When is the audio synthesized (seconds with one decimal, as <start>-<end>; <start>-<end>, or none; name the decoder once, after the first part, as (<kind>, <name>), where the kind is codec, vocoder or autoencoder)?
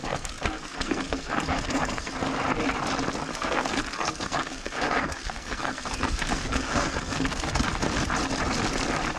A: 0.0-2.1 (codec, SNAC); 3.3-7.7